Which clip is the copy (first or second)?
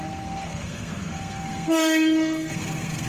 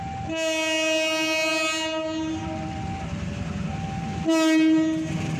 first